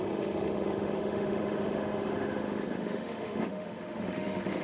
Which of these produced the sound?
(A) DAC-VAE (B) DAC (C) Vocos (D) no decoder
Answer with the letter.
A